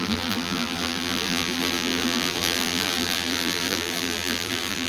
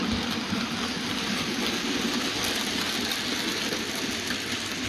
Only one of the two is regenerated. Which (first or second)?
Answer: first